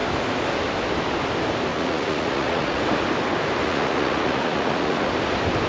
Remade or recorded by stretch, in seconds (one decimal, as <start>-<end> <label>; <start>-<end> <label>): 0.0-1.7 recorded; 1.7-2.8 remade; 2.8-3.6 recorded; 3.6-5.1 remade; 5.1-5.7 recorded